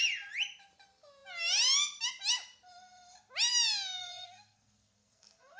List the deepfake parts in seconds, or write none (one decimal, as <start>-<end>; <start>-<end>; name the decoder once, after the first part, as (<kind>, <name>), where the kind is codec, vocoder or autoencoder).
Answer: 4.0-5.6 (codec, SNAC)